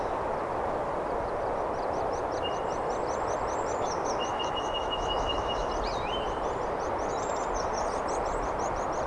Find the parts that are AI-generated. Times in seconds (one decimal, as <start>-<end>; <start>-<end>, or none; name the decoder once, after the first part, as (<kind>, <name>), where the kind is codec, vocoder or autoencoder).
4.3-5.7 (autoencoder, DAC-VAE)